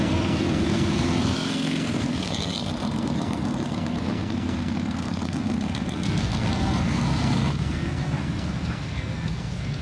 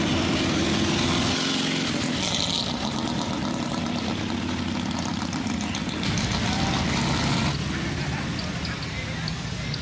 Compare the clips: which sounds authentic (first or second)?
second